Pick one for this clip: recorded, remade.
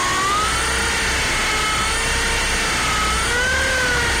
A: recorded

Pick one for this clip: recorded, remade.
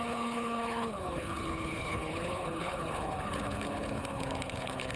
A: remade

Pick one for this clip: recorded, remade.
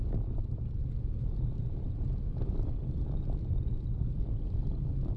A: remade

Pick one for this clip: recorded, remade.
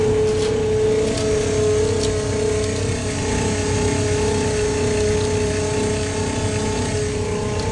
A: recorded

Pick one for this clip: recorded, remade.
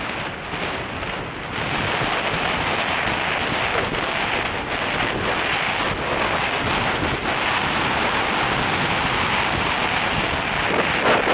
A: recorded